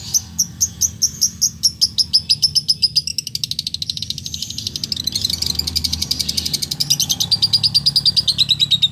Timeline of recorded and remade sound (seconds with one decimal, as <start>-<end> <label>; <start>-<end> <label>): 0.0-8.9 recorded